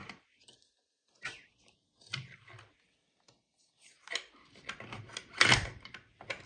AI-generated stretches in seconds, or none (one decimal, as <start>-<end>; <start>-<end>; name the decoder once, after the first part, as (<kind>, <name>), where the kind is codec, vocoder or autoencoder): 3.9-6.5 (vocoder, BigVGAN v2)